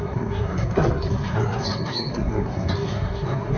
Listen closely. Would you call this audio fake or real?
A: fake